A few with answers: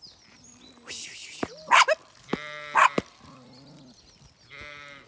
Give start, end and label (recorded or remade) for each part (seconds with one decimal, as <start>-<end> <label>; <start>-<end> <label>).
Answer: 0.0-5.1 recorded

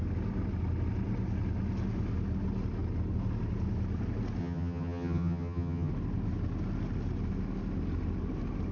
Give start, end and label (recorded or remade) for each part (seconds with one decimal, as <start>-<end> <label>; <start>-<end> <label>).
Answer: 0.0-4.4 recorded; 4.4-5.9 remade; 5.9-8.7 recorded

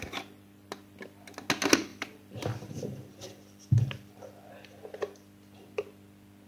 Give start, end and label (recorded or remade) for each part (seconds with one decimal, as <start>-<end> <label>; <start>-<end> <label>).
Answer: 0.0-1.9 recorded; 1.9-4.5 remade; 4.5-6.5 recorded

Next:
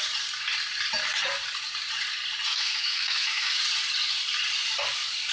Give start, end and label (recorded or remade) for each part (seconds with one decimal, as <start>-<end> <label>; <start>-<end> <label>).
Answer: 0.0-2.5 recorded; 2.5-3.6 remade; 3.6-5.3 recorded

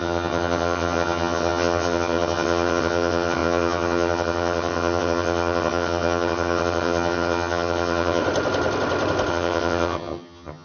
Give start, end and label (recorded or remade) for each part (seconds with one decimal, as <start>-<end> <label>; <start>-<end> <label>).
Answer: 0.0-8.2 remade; 8.2-9.3 recorded; 9.3-10.6 remade